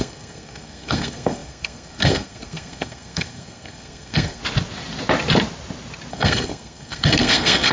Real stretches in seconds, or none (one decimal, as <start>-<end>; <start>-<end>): 4.4-6.1